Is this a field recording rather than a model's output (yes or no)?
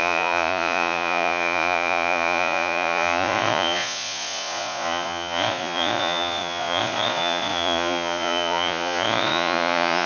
no